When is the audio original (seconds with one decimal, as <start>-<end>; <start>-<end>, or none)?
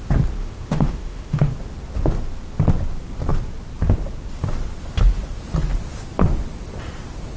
0.0-0.4; 1.5-7.4